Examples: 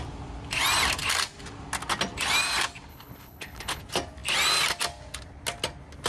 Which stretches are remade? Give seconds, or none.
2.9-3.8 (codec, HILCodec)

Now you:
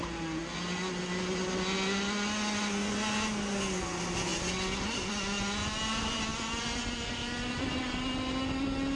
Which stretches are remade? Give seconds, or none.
none

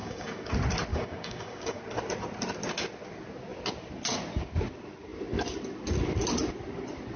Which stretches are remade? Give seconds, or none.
0.0-0.5 (codec, DAC); 0.9-1.8

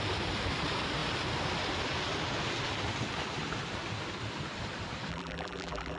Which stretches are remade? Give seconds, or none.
5.1-6.0 (vocoder, BigVGAN v2)

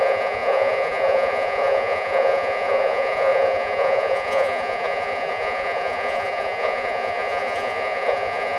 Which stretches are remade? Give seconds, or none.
0.0-8.6 (vocoder, Vocos)

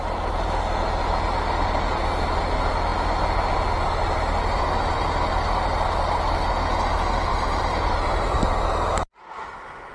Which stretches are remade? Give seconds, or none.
7.3-8.4 (vocoder, BigVGAN v2)

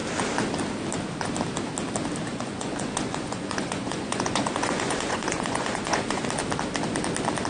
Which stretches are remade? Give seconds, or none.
2.3-6.2 (vocoder, Vocos)

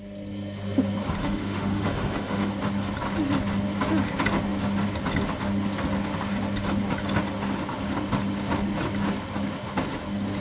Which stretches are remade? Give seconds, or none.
1.2-2.5 (autoencoder, DAC-VAE)